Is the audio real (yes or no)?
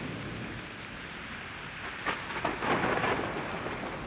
yes